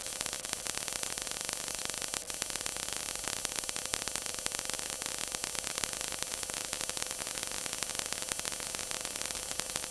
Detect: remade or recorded recorded